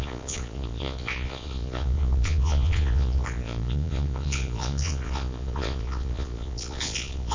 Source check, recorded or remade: remade